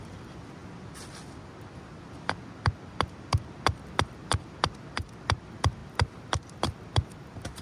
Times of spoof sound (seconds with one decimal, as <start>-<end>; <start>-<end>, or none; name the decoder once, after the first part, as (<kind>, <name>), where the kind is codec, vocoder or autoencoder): none